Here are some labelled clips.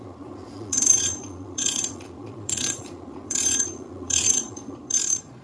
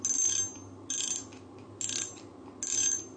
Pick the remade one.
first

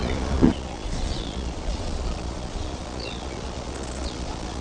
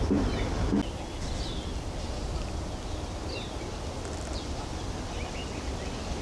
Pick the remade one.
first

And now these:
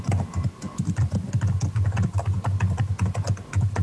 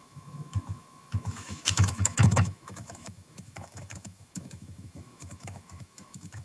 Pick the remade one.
second